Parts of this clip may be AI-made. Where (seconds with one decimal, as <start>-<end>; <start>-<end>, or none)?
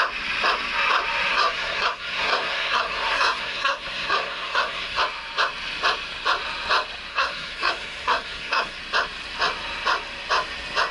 1.3-5.0; 7.1-8.8